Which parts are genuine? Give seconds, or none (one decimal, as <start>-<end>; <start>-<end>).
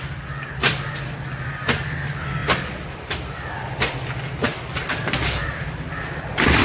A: 0.0-6.6